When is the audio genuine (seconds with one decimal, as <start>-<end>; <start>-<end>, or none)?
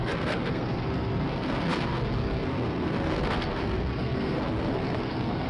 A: none